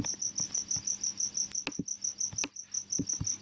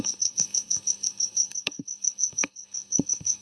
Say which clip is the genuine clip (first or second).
first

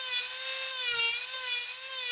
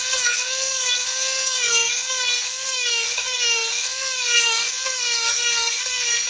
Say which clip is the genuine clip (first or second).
first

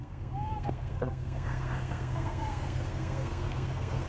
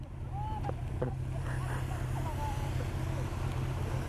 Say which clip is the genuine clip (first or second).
second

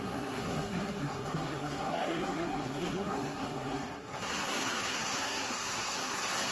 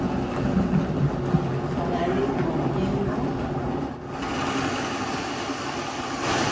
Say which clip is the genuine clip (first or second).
second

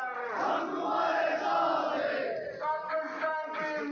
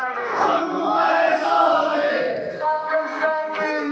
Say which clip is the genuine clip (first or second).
first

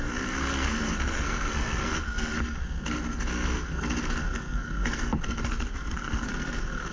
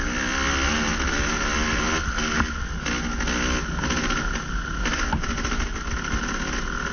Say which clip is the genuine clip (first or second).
second